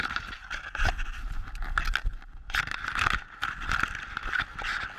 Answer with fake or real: real